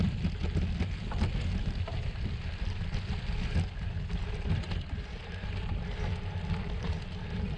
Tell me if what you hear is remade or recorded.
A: recorded